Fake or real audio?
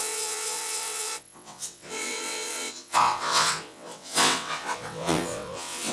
fake